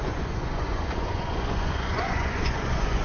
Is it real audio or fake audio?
fake